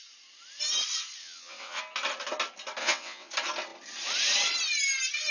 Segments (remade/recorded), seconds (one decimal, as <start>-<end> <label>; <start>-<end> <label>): 0.0-1.2 recorded; 1.2-1.8 remade; 1.8-2.8 recorded; 2.8-3.3 remade; 3.3-5.3 recorded